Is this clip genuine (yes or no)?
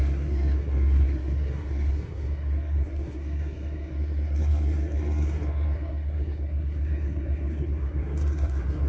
no